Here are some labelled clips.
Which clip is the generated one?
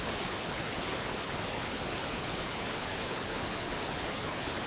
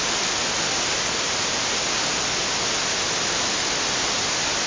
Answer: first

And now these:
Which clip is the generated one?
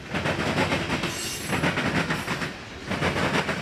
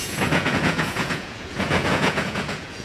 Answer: second